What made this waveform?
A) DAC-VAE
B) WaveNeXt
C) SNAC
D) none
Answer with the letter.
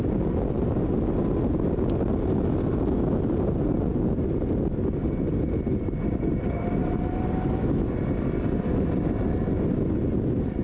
D